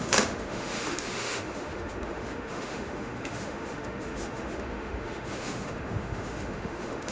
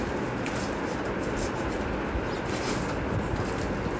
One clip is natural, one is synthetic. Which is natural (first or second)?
second